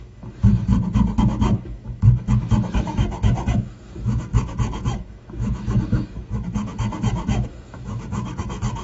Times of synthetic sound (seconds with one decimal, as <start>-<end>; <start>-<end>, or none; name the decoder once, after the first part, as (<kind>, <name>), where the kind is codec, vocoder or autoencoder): 0.0-0.7 (autoencoder, DAC-VAE); 1.2-8.8